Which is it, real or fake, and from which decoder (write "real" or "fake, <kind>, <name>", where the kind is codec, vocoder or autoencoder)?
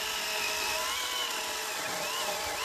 real